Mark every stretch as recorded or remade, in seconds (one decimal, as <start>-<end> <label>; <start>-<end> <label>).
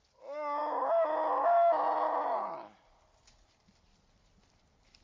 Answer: 0.0-5.0 recorded